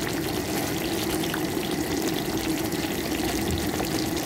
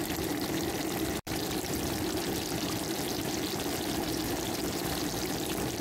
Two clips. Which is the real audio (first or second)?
first